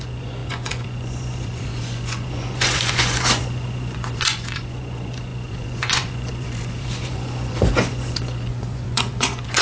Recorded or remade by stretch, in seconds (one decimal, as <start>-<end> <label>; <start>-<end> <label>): 0.0-9.6 remade